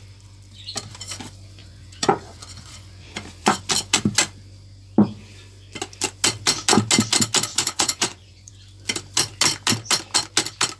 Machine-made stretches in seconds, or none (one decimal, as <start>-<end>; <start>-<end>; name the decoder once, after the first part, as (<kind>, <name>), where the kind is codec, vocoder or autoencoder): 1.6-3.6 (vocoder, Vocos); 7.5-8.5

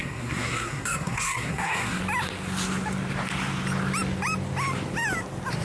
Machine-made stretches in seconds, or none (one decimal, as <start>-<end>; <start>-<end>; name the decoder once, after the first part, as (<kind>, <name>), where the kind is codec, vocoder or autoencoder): 0.0-2.0 (codec, SNAC)

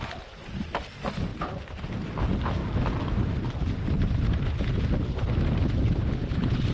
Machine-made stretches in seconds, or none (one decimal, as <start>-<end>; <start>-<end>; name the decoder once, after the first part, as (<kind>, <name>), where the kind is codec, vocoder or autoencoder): none

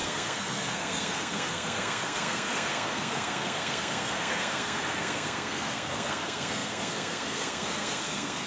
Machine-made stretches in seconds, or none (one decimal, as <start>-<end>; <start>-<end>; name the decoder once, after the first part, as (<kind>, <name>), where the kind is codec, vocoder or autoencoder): 0.0-8.5 (codec, SNAC)

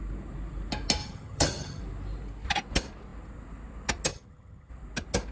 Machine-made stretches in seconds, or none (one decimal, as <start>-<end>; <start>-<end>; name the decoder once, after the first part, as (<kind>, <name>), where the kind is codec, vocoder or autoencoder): 1.0-1.8 (vocoder, HiFi-GAN); 4.1-4.7

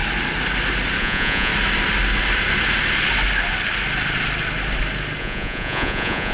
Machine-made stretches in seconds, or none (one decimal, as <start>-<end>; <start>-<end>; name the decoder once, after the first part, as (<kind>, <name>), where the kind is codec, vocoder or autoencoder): 1.0-1.5 (vocoder, Vocos); 5.2-6.3

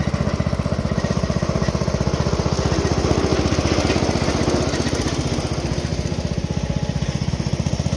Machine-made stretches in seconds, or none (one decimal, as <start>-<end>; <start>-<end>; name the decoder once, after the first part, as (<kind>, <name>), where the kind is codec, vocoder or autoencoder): none